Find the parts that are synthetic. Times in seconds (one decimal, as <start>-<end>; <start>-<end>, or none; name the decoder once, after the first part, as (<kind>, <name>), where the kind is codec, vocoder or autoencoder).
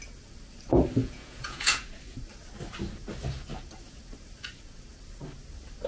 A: 1.0-1.9 (vocoder, Vocos)